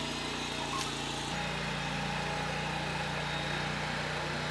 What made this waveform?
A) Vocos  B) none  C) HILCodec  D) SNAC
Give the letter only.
B